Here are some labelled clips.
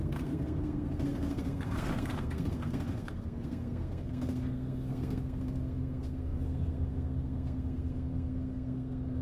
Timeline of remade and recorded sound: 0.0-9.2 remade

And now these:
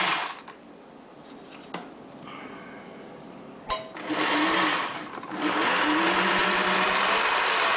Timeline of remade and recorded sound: 0.0-7.8 recorded

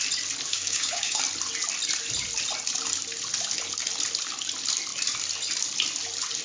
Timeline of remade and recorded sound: 0.0-0.5 recorded; 0.5-1.2 remade; 1.2-6.4 recorded